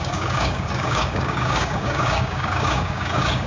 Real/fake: fake